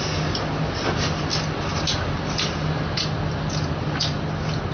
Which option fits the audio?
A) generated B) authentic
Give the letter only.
B